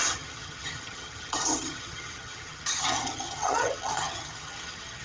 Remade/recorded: remade